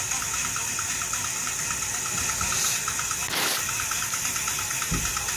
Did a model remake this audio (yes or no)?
no